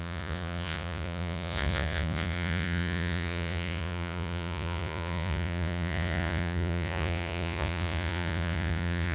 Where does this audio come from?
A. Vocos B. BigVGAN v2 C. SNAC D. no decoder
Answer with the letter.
A